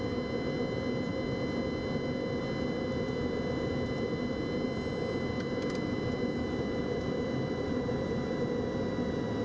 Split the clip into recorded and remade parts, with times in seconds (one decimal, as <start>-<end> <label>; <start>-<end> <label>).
0.0-9.4 recorded